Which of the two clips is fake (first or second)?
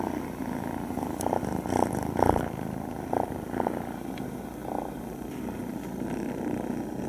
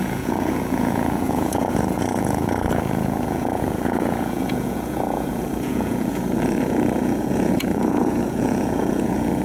second